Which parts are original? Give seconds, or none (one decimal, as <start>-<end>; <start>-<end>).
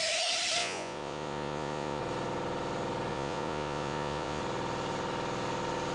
0.0-0.6; 2.0-3.1; 4.4-5.9